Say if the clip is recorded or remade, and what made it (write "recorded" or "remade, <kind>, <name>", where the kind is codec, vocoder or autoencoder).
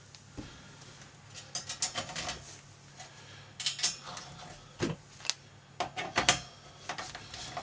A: recorded